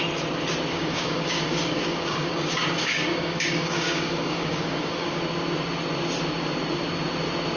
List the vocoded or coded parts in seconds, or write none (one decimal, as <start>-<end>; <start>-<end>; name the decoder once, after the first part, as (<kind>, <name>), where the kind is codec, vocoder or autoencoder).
0.7-5.2 (codec, DAC)